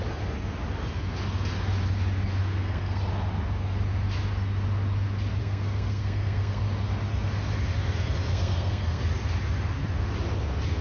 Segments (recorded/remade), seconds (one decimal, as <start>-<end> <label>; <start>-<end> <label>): 0.0-2.5 recorded; 2.5-3.0 remade; 3.0-5.4 recorded; 5.4-6.6 remade; 6.6-8.3 recorded; 8.3-9.0 remade; 9.0-10.8 recorded